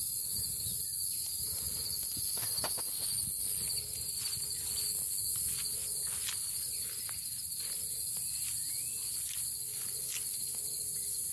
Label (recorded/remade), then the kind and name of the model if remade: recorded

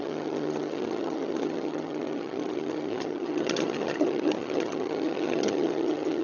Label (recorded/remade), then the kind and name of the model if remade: remade, vocoder, HiFi-GAN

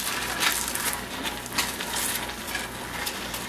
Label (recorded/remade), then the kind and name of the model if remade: recorded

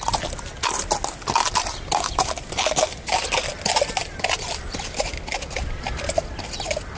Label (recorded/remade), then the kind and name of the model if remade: recorded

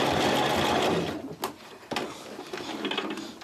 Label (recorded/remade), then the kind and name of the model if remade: recorded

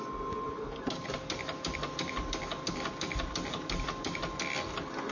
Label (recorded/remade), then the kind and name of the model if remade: recorded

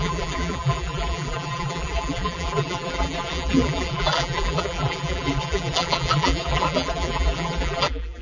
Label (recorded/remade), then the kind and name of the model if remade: remade, vocoder, BigVGAN v2